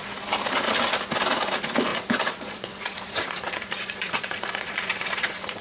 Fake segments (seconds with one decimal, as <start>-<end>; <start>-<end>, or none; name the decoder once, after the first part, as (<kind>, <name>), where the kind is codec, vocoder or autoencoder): 1.9-5.6 (vocoder, Vocos)